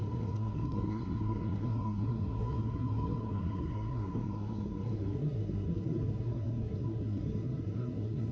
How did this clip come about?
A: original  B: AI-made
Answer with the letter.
B